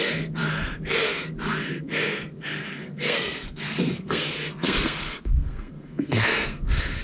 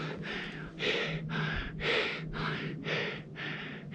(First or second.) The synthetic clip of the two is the first